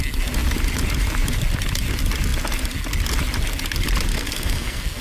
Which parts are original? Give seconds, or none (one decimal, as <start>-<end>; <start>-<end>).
0.0-4.1